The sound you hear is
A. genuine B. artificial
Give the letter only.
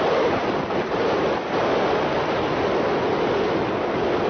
B